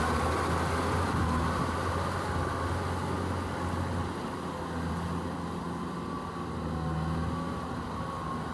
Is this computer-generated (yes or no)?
no